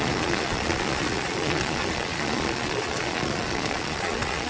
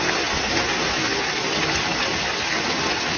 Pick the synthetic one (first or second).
first